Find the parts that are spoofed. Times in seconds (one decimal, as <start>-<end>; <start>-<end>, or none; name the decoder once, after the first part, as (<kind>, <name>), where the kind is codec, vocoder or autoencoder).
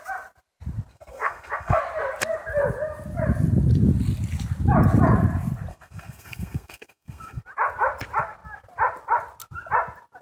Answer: 0.9-1.8 (codec, SNAC); 5.7-7.4